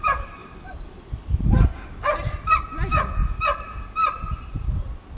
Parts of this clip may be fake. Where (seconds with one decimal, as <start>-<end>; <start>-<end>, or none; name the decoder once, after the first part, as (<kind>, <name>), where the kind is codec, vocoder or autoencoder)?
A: 0.4-2.6 (vocoder, BigVGAN v2); 4.0-4.7